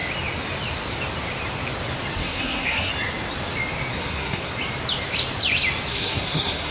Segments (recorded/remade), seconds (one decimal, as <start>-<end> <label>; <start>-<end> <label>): 0.0-2.2 recorded; 2.2-2.9 remade; 2.9-3.9 recorded; 3.9-4.5 remade; 4.5-5.9 recorded; 5.9-6.7 remade